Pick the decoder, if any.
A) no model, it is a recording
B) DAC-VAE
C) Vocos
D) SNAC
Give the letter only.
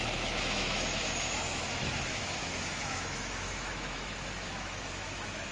B